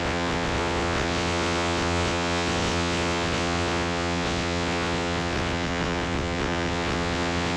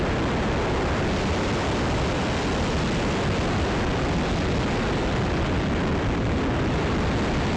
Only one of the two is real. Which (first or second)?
second